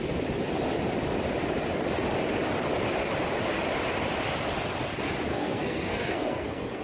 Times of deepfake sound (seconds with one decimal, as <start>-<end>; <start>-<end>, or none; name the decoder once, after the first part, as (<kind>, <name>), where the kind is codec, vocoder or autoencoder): 5.3-6.8 (codec, SNAC)